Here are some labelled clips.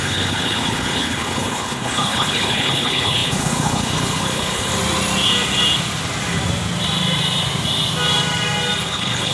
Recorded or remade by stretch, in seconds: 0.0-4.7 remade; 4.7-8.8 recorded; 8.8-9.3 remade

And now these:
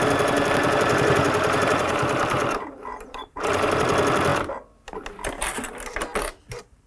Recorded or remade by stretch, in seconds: 0.0-0.6 recorded; 0.6-3.8 remade; 3.8-6.9 recorded

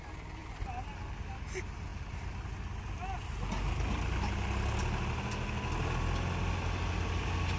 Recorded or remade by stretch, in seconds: 0.0-7.6 recorded

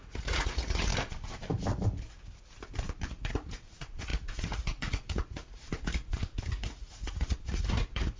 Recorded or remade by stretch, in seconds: 0.0-0.9 remade; 0.9-3.1 recorded; 3.1-8.2 remade

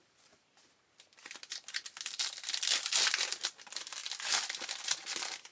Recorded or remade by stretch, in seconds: 0.0-5.5 recorded

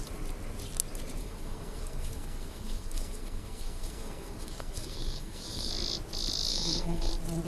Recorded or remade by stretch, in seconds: 0.0-1.2 recorded; 1.2-5.7 remade; 5.7-6.5 recorded; 6.5-7.1 remade; 7.1-7.5 recorded